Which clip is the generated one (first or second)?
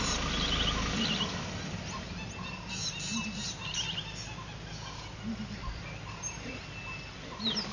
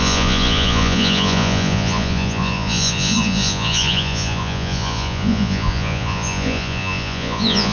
second